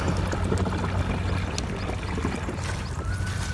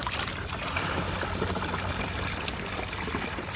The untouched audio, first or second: first